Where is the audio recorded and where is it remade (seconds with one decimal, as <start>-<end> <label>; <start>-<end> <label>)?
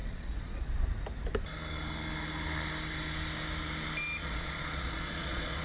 0.0-0.7 remade; 0.7-4.2 recorded; 4.2-5.6 remade